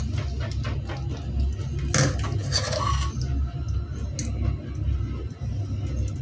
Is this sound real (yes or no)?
yes